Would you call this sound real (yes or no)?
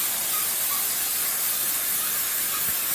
yes